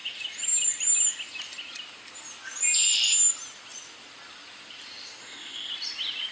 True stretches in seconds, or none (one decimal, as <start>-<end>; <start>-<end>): 0.0-5.2; 5.7-6.3